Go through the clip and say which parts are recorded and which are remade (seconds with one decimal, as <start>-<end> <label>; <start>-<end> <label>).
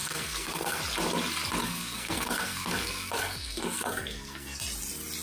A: 0.0-0.8 remade; 0.8-1.6 recorded; 1.6-4.6 remade; 4.6-5.2 recorded